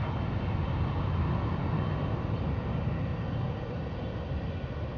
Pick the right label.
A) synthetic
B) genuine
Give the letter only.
B